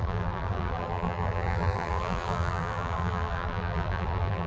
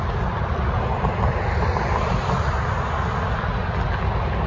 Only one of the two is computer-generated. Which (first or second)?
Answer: first